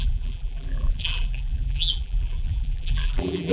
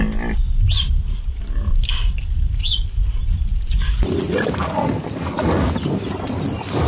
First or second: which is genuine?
second